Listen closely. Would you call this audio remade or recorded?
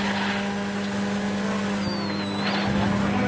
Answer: recorded